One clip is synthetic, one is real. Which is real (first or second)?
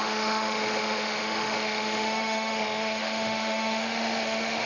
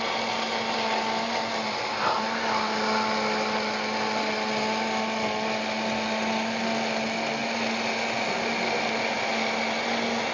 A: second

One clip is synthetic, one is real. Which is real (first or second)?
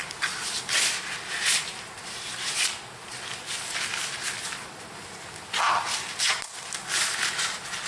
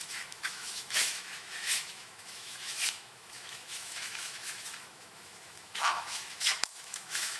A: first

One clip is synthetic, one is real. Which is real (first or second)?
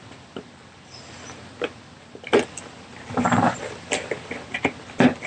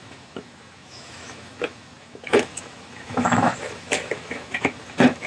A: first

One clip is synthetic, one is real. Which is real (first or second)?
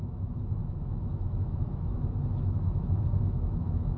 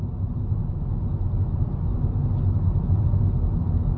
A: second